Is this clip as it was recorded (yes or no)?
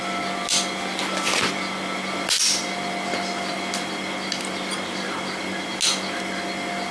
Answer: yes